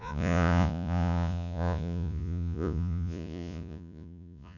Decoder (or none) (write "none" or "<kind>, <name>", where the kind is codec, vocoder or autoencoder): vocoder, Vocos